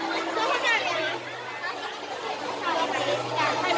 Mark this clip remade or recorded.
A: recorded